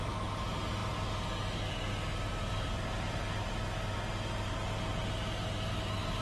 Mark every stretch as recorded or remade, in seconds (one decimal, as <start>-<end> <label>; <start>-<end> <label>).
0.0-2.3 recorded; 2.3-3.2 remade; 3.2-6.2 recorded